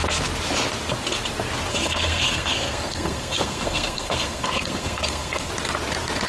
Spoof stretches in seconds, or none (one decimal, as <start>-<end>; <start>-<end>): 1.7-5.5